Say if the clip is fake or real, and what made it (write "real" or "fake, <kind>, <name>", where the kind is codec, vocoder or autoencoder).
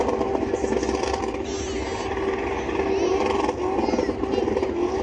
real